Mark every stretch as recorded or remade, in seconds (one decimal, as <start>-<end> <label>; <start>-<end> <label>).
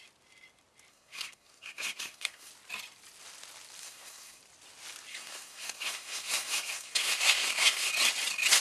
0.0-0.9 recorded; 0.9-2.5 remade; 2.5-3.8 recorded; 3.8-4.4 remade; 4.4-5.1 recorded; 5.1-7.9 remade; 7.9-8.6 recorded